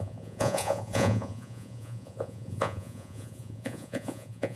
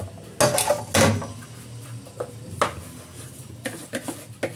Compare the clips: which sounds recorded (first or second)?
second